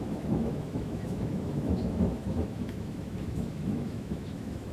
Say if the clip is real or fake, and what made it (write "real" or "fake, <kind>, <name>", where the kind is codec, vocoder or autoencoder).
fake, autoencoder, DAC-VAE